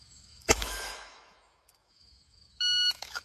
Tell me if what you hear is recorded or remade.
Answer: remade